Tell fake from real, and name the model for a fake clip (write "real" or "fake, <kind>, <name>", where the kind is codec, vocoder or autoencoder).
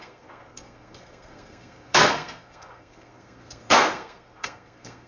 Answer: fake, codec, SNAC